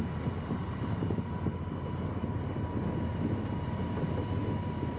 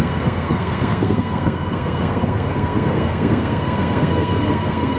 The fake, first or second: second